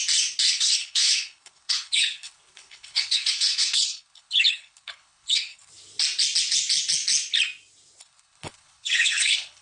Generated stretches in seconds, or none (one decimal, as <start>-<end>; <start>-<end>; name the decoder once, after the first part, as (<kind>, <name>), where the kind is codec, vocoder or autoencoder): 0.5-5.7 (codec, HILCodec); 8.0-9.6